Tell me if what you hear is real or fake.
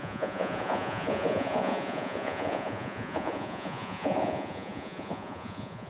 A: fake